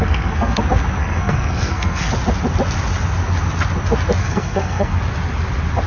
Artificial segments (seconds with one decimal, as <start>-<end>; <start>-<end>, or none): 0.0-0.6; 1.0-2.1; 4.2-5.0